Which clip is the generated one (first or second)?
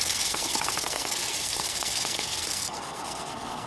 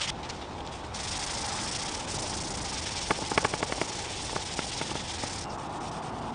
first